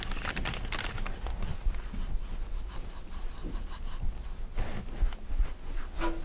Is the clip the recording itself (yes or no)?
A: yes